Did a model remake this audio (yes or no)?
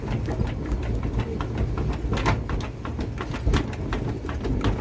no